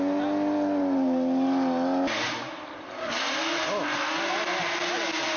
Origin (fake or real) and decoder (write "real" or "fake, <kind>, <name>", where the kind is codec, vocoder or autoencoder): real